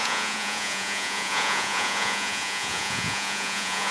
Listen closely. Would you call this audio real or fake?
fake